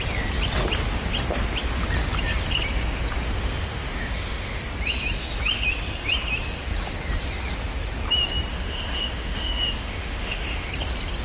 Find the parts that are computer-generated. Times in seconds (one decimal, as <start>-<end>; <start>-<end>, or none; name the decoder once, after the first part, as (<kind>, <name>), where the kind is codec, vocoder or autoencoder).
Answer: 3.4-4.6 (autoencoder, DAC-VAE); 8.5-10.7